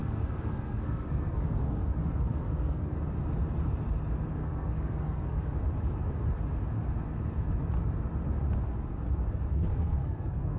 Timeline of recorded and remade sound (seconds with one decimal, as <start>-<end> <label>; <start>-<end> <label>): 0.0-2.9 remade; 2.9-4.4 recorded; 4.4-5.6 remade; 5.6-9.7 recorded; 9.7-10.6 remade